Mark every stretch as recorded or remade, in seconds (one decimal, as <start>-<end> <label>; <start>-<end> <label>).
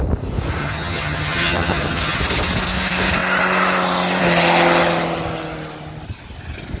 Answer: 0.0-0.6 recorded; 0.6-2.2 remade; 2.2-6.8 recorded